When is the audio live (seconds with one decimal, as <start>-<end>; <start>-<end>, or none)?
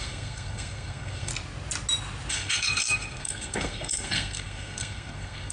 1.3-2.3